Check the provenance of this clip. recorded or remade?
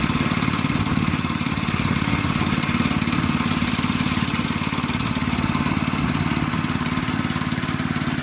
recorded